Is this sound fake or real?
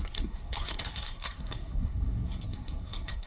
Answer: fake